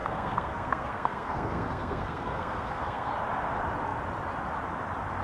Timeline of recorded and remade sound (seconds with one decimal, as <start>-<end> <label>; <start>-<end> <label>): 0.0-3.1 remade; 3.1-5.2 recorded